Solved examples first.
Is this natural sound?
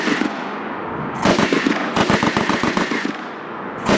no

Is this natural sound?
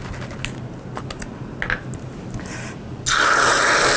yes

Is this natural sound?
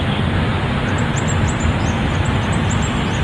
yes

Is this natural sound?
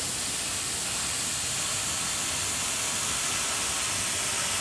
yes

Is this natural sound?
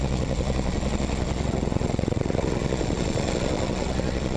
no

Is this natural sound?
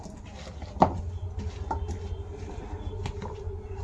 yes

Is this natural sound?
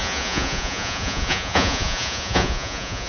no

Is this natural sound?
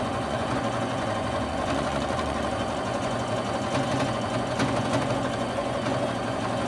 no